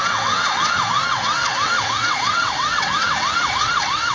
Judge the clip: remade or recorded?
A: remade